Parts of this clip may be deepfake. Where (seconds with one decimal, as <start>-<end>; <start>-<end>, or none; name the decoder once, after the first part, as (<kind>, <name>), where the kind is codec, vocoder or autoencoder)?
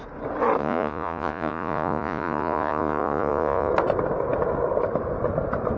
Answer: 0.6-3.7 (vocoder, Vocos)